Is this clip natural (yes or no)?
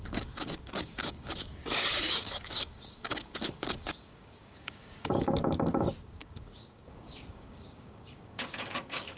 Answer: no